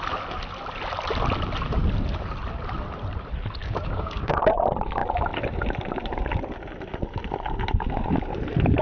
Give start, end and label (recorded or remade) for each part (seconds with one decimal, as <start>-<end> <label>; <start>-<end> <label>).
0.0-3.6 recorded; 3.6-4.5 remade; 4.5-8.8 recorded